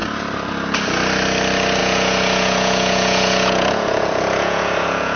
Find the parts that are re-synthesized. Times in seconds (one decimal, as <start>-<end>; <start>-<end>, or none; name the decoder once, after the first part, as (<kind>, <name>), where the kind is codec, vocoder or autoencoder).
1.8-5.2 (vocoder, Vocos)